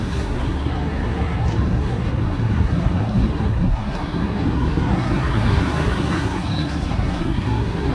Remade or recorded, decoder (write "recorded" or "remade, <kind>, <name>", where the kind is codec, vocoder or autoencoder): remade, codec, SNAC